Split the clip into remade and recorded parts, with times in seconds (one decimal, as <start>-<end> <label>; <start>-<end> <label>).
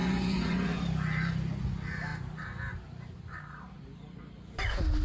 0.0-0.8 remade; 0.8-5.0 recorded